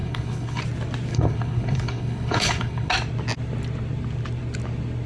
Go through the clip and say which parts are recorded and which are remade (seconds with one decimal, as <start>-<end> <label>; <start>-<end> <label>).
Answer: 0.0-0.6 remade; 0.6-1.1 recorded; 1.1-2.9 remade; 2.9-5.1 recorded